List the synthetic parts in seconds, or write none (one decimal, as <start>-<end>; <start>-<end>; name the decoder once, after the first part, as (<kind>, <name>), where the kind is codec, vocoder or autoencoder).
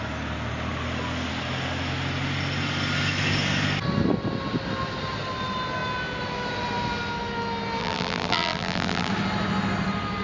7.8-9.1 (vocoder, BigVGAN v2)